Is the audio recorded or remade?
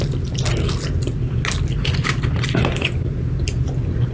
recorded